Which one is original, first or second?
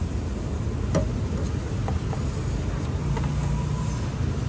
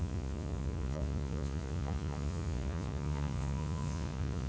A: first